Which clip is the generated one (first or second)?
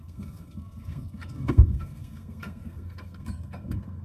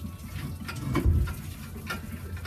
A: first